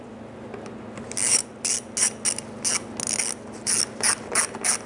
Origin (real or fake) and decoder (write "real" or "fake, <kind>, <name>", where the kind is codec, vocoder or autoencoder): real